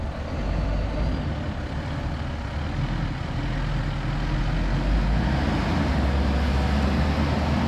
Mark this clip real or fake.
real